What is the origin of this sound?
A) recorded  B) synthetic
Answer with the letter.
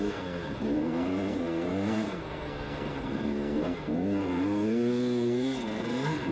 B